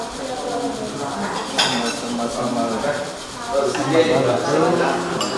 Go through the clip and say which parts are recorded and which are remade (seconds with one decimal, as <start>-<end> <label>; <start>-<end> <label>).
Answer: 0.0-5.4 recorded